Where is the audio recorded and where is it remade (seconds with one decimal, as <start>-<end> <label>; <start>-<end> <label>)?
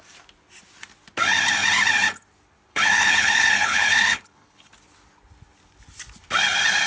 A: 0.0-2.7 recorded; 2.7-4.7 remade; 4.7-6.9 recorded